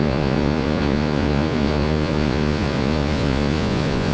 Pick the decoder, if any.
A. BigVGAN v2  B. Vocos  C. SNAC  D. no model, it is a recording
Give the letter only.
B